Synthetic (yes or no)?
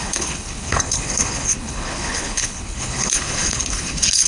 yes